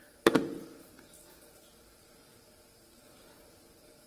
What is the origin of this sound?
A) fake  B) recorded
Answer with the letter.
B